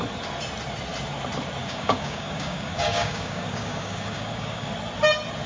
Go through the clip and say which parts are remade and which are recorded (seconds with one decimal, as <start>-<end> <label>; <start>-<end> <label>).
0.0-1.6 recorded; 1.6-4.7 remade; 4.7-5.5 recorded